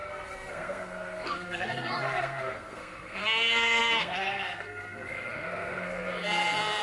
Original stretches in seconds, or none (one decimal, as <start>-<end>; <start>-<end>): none